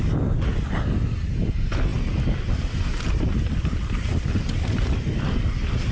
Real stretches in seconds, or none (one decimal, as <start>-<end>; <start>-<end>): 0.0-5.9